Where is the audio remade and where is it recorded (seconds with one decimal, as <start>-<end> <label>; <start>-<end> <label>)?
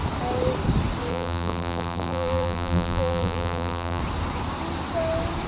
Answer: 0.0-1.1 recorded; 1.1-4.0 remade; 4.0-5.5 recorded